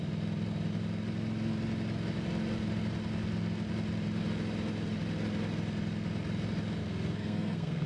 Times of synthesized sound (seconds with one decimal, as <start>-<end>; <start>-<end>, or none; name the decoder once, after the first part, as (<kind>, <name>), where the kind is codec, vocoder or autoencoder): 6.8-7.9 (codec, SNAC)